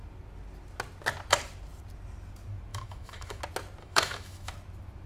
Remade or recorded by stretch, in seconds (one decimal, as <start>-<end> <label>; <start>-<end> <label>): 0.0-2.7 recorded; 2.7-3.4 remade; 3.4-3.8 recorded; 3.8-4.5 remade; 4.5-5.1 recorded